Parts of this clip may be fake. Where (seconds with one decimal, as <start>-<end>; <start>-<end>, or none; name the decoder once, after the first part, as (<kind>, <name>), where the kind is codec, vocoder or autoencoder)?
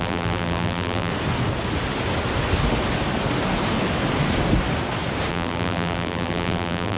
0.0-1.1 (vocoder, BigVGAN v2); 5.3-7.0